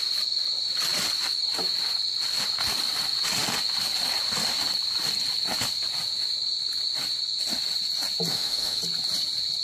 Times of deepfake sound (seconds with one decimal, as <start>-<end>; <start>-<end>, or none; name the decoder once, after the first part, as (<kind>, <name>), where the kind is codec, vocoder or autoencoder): 8.3-8.8 (autoencoder, DAC-VAE)